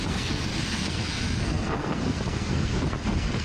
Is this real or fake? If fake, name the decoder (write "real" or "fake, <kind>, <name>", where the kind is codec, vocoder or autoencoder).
fake, codec, SNAC